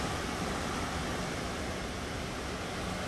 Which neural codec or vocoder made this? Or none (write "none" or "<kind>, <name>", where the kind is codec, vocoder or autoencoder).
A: none